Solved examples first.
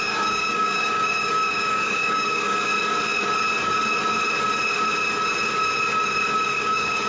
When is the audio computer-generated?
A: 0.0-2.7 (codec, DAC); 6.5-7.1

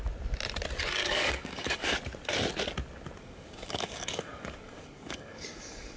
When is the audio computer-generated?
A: 1.0-2.0 (codec, DAC); 3.2-6.0

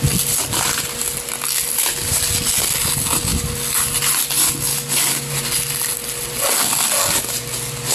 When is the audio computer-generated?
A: 4.7-5.3 (codec, DAC)

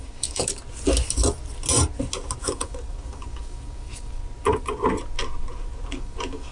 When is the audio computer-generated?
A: 0.0-0.5 (codec, DAC); 2.4-4.2; 5.9-6.5

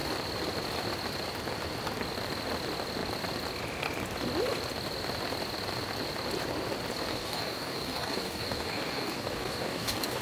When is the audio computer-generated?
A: 7.1-10.2 (codec, DAC)

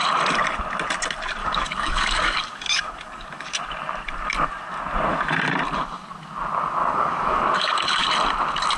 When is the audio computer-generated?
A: 1.4-3.5 (codec, DAC); 6.8-8.1

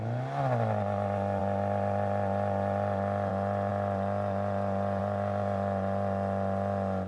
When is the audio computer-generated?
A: none

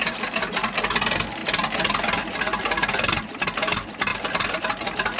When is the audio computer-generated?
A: none